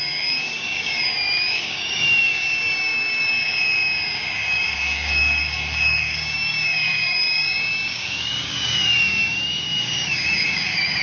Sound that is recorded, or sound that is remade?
remade